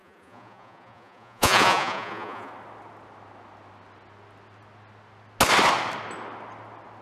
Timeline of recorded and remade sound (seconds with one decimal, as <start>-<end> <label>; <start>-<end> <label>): 0.0-2.5 remade; 2.5-7.0 recorded